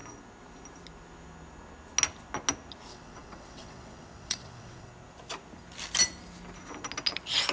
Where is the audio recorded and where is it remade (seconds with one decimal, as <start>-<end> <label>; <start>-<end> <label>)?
0.0-2.9 recorded; 2.9-4.9 remade; 4.9-7.5 recorded